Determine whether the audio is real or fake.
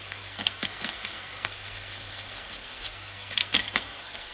fake